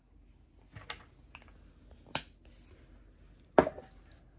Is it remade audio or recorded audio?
recorded